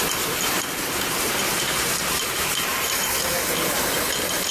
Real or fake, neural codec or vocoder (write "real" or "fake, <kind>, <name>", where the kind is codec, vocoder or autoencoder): real